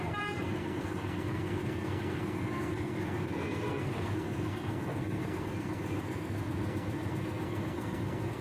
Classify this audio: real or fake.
fake